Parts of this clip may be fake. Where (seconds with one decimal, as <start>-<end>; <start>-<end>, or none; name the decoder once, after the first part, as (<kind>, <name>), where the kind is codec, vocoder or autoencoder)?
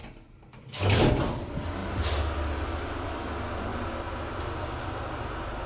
0.0-1.1 (vocoder, BigVGAN v2); 1.8-2.9